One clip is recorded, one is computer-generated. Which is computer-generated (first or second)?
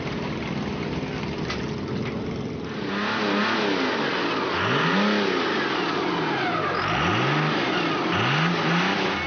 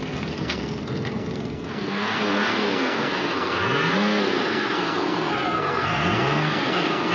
second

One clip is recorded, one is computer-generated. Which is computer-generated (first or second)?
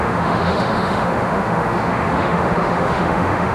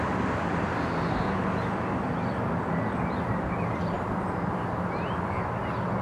first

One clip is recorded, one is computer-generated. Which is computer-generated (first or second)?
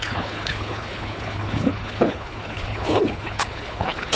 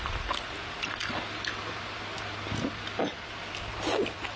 first